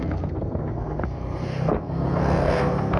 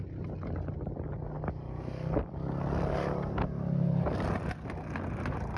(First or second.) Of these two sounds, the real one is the second